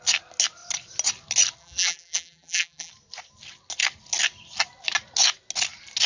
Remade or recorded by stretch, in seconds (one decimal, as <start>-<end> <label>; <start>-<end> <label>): 0.0-1.6 recorded; 1.6-2.9 remade; 2.9-6.1 recorded